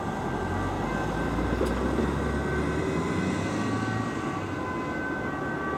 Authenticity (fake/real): real